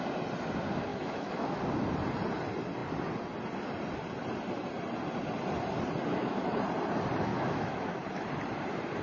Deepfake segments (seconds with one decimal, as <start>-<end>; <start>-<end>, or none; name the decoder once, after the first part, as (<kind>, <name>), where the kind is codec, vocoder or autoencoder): 0.9-1.6 (autoencoder, DAC-VAE); 6.1-6.6; 7.3-8.0